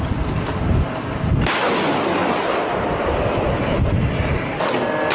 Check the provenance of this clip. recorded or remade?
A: recorded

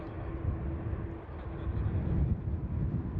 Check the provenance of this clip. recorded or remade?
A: recorded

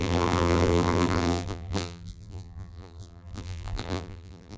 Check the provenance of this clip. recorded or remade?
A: remade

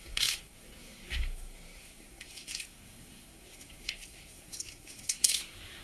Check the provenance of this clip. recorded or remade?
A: remade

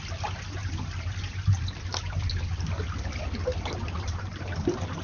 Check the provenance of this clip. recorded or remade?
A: recorded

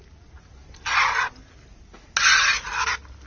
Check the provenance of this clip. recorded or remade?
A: recorded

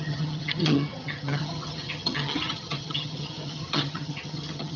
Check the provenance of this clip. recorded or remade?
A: remade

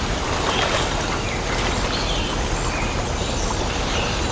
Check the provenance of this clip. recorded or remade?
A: recorded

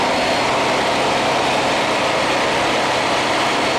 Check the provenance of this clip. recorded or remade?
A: recorded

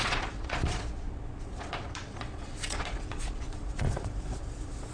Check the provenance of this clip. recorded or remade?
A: remade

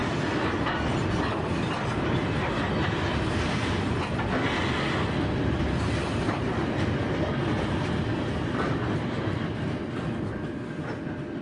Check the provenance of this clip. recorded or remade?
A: recorded